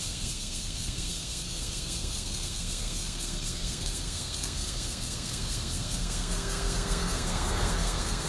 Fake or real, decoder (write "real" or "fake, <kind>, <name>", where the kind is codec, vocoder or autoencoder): fake, codec, SNAC